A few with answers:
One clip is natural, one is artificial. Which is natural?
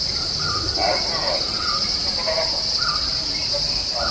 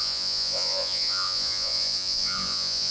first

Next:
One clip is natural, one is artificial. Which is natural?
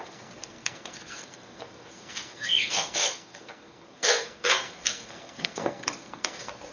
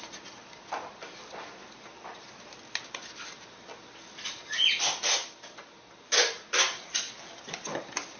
second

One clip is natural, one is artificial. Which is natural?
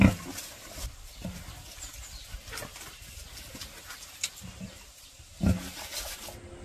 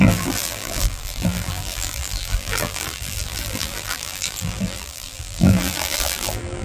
first